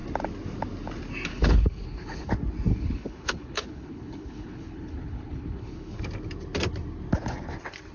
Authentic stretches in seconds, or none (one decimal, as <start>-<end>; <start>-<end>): 0.0-1.3; 2.3-2.7; 6.0-7.9